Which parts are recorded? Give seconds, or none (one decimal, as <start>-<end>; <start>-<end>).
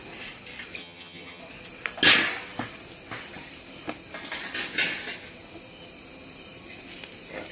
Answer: 0.0-0.8; 1.4-7.5